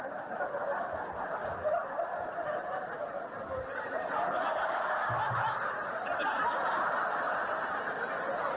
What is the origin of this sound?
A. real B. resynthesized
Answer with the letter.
A